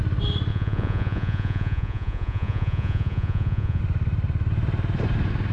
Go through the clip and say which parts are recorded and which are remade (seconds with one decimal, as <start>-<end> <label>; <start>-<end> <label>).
0.0-0.5 recorded; 0.5-3.8 remade; 3.8-5.5 recorded